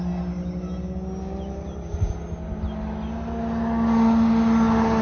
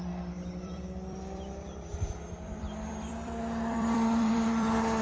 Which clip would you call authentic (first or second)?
first